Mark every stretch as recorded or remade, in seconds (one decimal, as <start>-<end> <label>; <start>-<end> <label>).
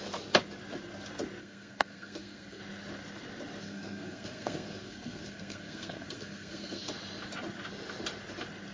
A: 0.0-1.4 recorded; 1.4-2.6 remade; 2.6-3.6 recorded; 3.6-6.9 remade; 6.9-8.7 recorded